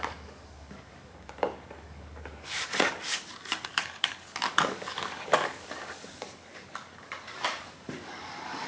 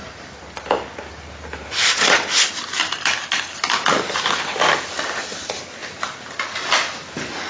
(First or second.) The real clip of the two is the second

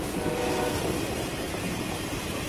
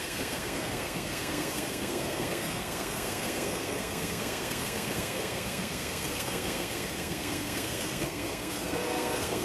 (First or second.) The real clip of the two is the first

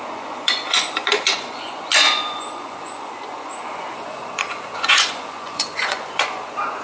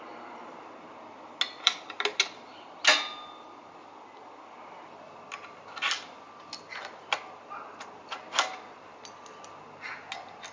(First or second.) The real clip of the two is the second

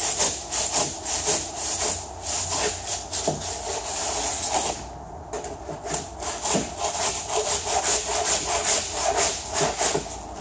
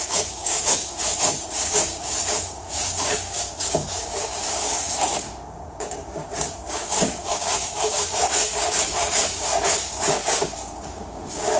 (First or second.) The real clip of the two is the first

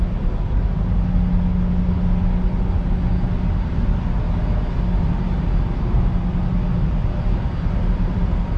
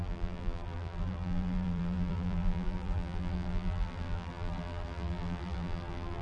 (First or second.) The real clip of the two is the first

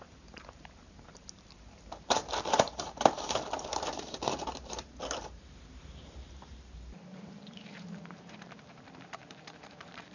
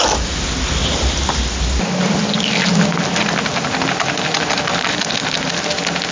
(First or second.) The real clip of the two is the second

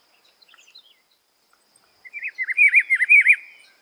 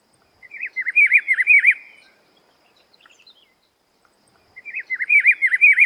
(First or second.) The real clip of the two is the first